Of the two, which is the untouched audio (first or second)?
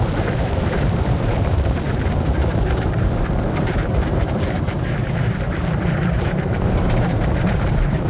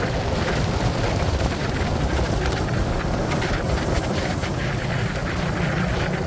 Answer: second